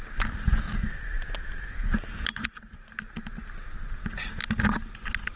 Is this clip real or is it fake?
real